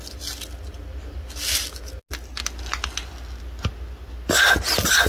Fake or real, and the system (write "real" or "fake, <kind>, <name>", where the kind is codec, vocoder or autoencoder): real